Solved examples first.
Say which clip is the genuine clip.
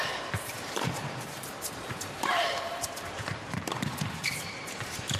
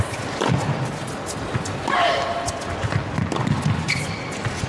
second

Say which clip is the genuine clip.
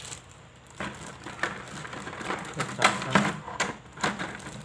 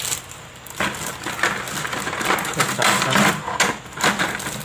second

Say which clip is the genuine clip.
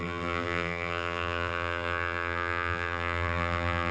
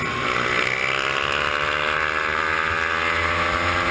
second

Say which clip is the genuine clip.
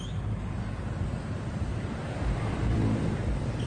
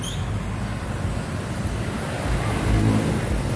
second